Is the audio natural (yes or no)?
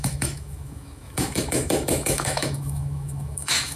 no